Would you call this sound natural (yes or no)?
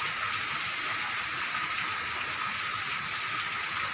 yes